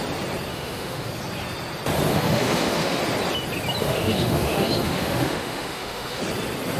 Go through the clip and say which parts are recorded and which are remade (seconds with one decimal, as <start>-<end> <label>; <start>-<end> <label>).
0.0-0.5 recorded; 0.5-1.1 remade; 1.1-2.1 recorded; 2.1-3.0 remade; 3.0-3.8 recorded; 3.8-6.2 remade; 6.2-6.8 recorded